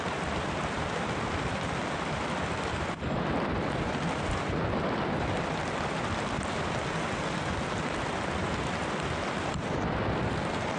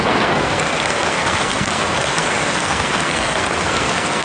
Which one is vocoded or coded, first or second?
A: second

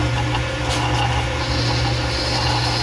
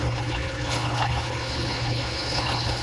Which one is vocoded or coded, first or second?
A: second